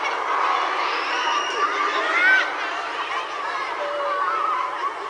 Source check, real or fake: real